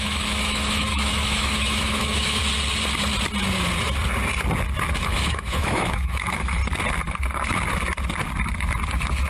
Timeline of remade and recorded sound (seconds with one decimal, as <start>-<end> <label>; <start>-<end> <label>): 0.0-2.4 remade; 2.4-5.0 recorded; 5.0-6.6 remade; 6.6-9.3 recorded